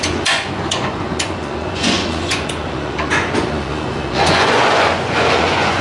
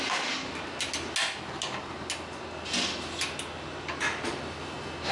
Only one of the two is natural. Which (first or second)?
second